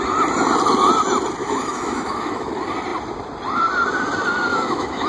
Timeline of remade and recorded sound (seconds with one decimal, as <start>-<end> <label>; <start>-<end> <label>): 0.0-1.4 recorded; 1.4-2.5 remade; 2.5-4.5 recorded; 4.5-5.1 remade